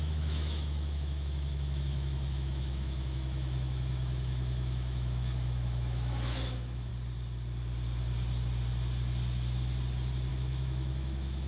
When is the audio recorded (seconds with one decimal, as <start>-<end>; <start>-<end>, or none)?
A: 6.9-10.3